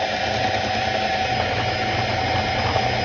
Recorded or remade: recorded